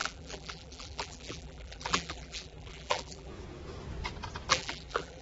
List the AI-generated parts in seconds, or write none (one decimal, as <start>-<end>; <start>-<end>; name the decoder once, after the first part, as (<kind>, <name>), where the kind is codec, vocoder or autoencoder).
0.0-3.3 (vocoder, BigVGAN v2); 4.5-5.2